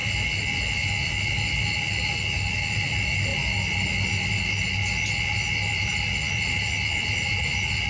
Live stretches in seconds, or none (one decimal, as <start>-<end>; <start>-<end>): 0.0-7.9